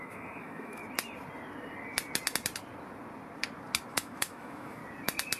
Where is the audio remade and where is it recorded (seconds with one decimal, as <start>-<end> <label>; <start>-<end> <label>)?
0.0-0.8 remade; 0.8-3.9 recorded; 3.9-4.8 remade; 4.8-5.4 recorded